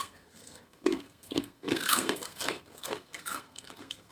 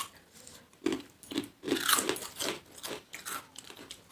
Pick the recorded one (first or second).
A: second